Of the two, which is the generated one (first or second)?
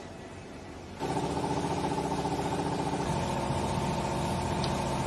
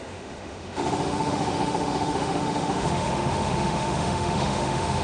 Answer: second